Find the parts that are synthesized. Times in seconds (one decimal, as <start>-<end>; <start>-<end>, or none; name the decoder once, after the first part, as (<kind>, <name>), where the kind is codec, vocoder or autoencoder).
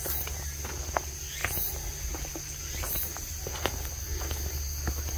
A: none